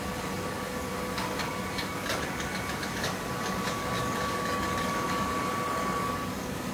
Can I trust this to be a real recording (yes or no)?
no